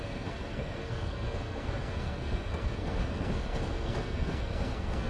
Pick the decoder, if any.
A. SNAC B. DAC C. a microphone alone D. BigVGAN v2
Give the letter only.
A